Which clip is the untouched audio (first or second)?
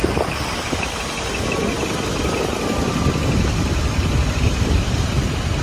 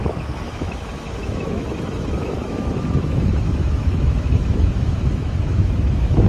first